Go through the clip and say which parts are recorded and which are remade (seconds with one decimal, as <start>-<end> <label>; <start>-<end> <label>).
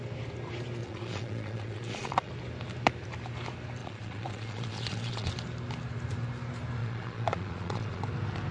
0.0-0.8 recorded; 0.8-2.3 remade; 2.3-3.8 recorded; 3.8-5.3 remade; 5.3-6.8 recorded; 6.8-8.0 remade; 8.0-8.5 recorded